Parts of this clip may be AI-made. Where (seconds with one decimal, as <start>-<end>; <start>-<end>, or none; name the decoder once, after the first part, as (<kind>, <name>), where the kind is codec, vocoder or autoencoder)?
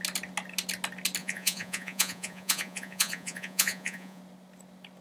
1.2-4.2 (vocoder, Vocos)